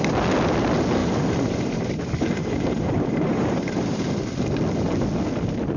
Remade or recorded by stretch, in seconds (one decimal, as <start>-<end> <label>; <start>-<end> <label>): 0.0-1.0 recorded; 1.0-4.1 remade; 4.1-5.8 recorded